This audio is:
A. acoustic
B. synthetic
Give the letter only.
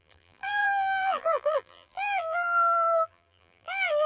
B